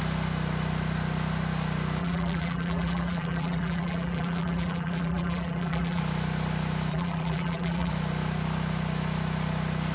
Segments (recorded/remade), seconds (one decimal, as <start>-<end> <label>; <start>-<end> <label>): 0.0-2.0 recorded; 2.0-6.0 remade; 6.0-6.9 recorded; 6.9-7.9 remade; 7.9-9.9 recorded